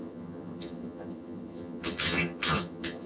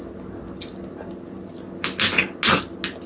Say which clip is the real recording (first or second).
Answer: second